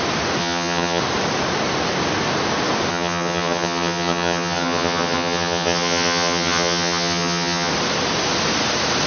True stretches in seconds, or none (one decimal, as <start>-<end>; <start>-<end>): 0.0-0.4; 1.0-2.9; 7.7-9.1

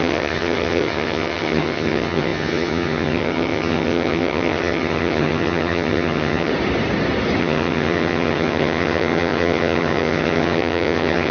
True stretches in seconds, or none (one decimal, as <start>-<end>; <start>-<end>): 6.5-7.4

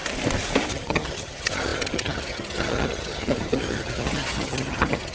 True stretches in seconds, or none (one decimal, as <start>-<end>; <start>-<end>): 0.0-0.7

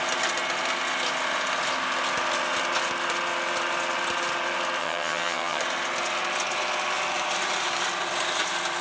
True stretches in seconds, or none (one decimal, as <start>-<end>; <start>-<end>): 0.0-4.8; 5.6-8.8

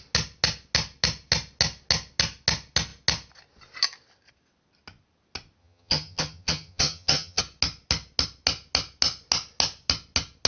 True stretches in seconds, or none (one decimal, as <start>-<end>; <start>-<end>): 0.0-5.6; 7.4-10.5

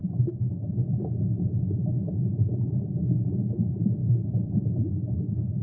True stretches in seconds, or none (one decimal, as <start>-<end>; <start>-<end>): 0.0-5.6

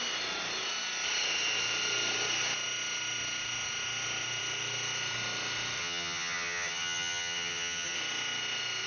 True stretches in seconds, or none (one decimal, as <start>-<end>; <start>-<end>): 0.0-5.8; 8.0-8.9

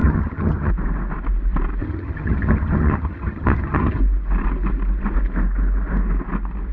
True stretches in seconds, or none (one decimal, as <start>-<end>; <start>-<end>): 0.7-1.8; 4.0-6.7